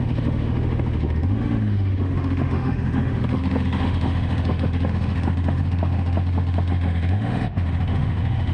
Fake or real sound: fake